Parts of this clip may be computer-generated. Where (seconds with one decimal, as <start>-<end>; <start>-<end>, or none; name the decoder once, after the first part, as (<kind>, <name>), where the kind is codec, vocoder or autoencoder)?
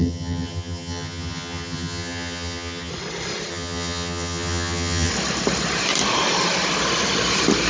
0.0-2.9 (vocoder, HiFi-GAN); 3.5-5.1